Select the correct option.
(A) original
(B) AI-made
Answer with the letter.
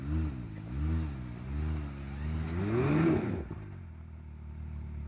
A